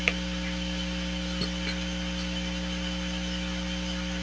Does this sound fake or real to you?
real